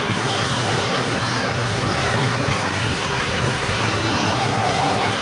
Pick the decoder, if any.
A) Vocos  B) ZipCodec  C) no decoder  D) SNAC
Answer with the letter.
D